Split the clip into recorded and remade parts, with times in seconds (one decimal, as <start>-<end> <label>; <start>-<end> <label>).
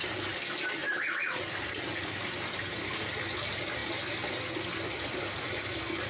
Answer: 0.0-6.1 recorded